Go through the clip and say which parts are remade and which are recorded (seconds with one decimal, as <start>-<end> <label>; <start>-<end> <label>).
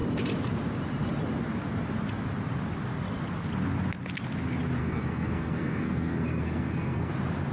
0.0-4.8 recorded; 4.8-7.1 remade; 7.1-7.5 recorded